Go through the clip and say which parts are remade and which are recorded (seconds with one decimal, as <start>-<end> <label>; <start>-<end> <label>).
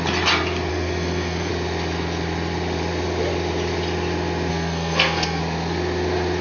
0.0-0.7 recorded; 0.7-1.5 remade; 1.5-4.5 recorded; 4.5-5.4 remade; 5.4-6.4 recorded